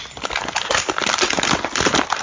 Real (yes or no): yes